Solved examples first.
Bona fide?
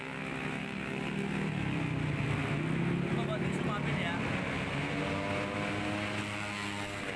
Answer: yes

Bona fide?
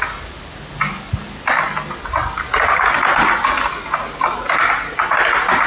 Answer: yes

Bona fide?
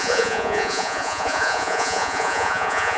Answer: no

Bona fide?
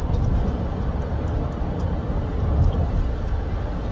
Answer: yes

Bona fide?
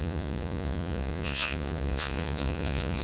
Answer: no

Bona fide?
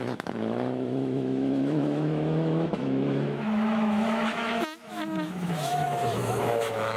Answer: no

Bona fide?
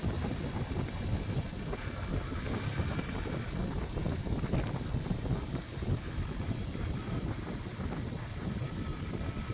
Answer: yes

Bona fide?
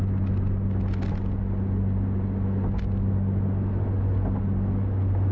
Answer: yes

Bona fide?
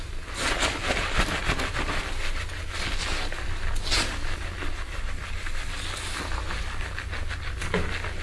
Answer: yes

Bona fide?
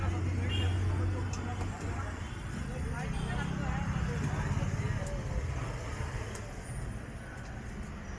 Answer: yes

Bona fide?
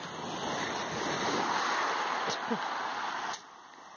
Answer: yes